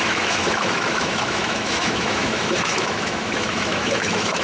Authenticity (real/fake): fake